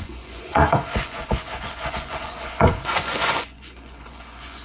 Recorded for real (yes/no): no